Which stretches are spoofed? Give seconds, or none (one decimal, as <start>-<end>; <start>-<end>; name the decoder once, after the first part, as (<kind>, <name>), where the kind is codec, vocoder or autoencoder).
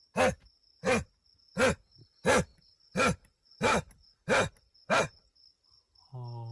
0.5-1.1 (vocoder, BigVGAN v2); 2.5-6.5